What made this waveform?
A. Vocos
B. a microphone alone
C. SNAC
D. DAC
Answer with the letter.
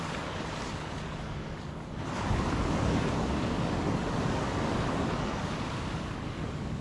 D